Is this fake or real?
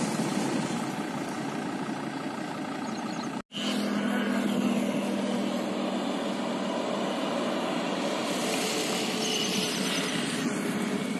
real